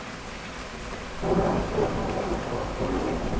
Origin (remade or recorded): recorded